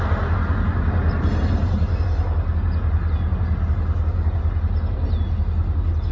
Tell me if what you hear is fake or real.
real